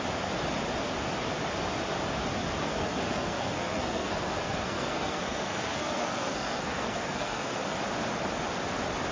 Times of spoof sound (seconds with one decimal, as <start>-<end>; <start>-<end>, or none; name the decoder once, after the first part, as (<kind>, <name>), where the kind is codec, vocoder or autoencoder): 2.6-7.8 (codec, SNAC)